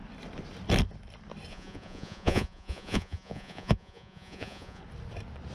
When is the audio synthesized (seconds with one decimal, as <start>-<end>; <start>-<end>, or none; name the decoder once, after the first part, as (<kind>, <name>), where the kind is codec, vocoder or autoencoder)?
1.5-4.8 (vocoder, Vocos)